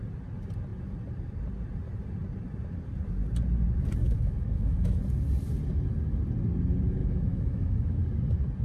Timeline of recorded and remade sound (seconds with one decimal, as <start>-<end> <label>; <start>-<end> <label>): 0.0-4.0 recorded; 4.0-5.0 remade; 5.0-7.0 recorded; 7.0-8.0 remade; 8.0-8.6 recorded